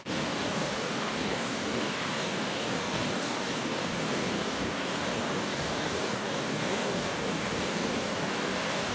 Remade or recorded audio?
remade